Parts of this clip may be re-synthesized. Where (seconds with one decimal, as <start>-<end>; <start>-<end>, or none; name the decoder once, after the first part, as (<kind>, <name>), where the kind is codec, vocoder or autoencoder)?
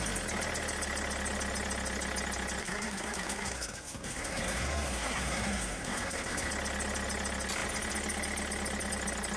2.6-6.5 (codec, SNAC)